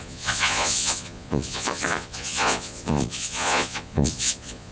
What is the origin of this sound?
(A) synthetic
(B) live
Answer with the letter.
A